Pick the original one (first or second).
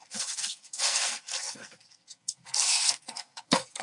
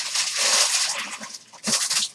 second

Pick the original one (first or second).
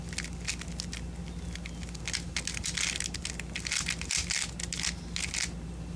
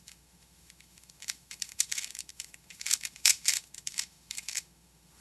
first